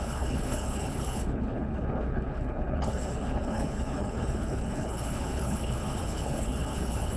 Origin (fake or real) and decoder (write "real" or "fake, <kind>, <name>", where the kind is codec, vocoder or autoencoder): fake, codec, HILCodec